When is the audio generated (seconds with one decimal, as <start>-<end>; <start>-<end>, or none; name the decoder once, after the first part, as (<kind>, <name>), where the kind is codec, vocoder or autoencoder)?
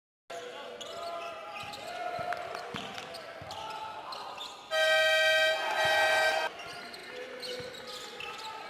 none